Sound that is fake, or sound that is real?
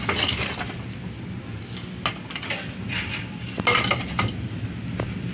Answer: real